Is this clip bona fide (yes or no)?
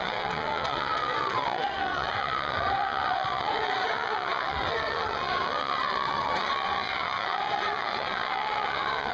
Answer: no